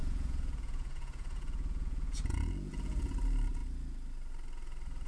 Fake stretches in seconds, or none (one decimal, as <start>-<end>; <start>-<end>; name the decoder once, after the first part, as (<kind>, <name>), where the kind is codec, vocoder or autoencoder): 0.0-3.1 (vocoder, Vocos)